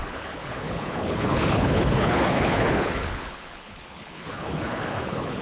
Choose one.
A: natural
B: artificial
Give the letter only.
B